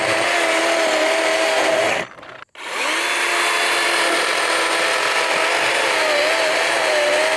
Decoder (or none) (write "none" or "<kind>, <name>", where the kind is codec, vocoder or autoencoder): none